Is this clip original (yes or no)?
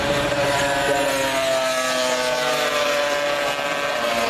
yes